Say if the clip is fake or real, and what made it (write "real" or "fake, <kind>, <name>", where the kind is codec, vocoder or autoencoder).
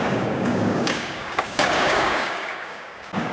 fake, codec, DAC